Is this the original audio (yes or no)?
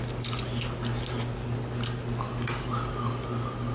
yes